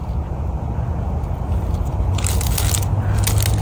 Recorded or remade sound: recorded